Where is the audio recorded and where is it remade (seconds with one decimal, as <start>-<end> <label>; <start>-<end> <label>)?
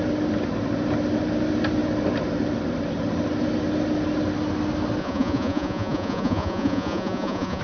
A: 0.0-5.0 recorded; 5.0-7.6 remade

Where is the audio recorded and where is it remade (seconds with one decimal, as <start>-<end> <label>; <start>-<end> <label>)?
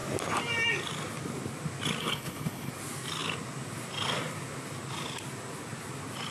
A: 0.0-2.0 recorded; 2.0-2.7 remade; 2.7-6.3 recorded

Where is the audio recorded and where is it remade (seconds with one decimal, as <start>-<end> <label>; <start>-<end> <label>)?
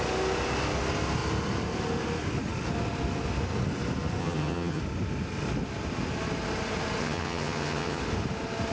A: 0.0-4.2 recorded; 4.2-4.8 remade; 4.8-7.0 recorded; 7.0-8.0 remade; 8.0-8.7 recorded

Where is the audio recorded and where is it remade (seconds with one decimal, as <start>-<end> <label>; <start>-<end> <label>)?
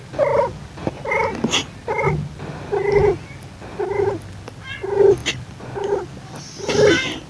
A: 0.0-7.3 recorded